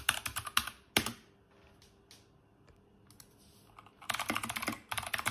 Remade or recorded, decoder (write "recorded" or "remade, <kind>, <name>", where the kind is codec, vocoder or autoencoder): recorded